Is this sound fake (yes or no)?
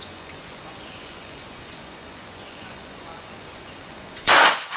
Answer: yes